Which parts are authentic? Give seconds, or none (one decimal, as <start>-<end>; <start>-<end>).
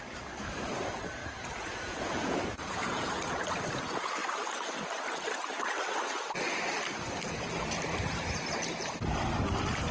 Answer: 0.0-1.2; 3.2-9.9